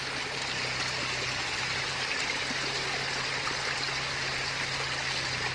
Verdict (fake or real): real